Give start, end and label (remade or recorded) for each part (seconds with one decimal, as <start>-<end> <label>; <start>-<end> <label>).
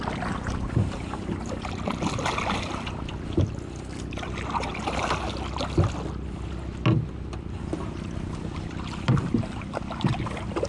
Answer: 0.0-10.7 recorded